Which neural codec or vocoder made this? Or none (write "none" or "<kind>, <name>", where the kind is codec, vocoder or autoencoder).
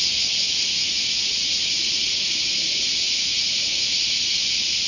vocoder, Vocos